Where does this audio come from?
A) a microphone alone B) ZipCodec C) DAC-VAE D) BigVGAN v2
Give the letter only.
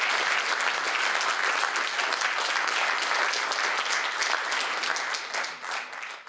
A